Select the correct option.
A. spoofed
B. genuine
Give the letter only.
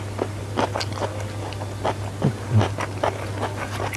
B